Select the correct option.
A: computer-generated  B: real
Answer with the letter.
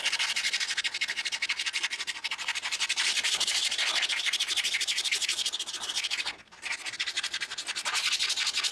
B